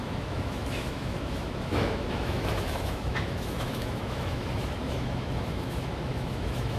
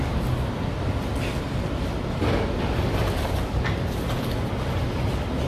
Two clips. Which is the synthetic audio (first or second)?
first